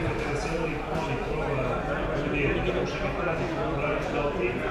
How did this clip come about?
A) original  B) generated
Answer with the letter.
A